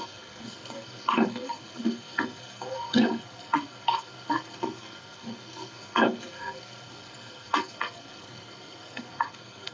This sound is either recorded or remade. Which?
remade